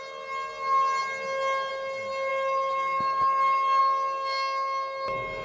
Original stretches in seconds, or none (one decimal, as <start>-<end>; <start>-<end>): 0.0-2.3; 3.8-5.4